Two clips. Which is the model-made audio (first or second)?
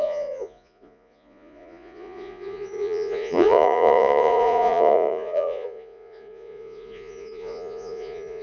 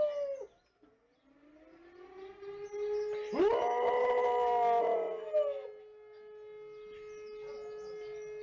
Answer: first